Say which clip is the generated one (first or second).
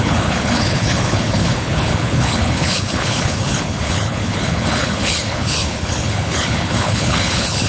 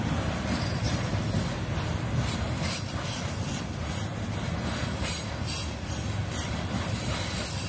first